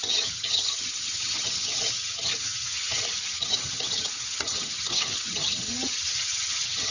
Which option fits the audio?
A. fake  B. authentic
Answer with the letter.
A